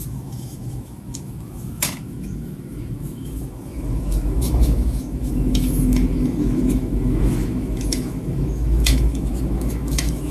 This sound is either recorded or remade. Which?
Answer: remade